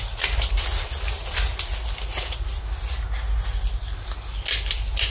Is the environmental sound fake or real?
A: real